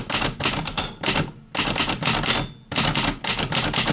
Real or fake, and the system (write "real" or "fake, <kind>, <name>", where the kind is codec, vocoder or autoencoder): real